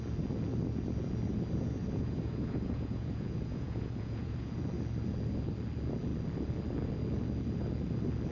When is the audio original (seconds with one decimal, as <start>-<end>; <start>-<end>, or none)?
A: 0.0-1.8; 4.5-8.3